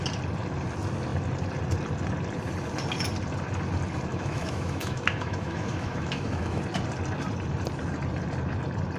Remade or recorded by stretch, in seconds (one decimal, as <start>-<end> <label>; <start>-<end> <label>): 0.0-4.1 recorded; 4.1-6.6 remade; 6.6-9.0 recorded